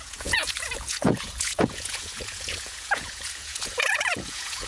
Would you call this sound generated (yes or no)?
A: yes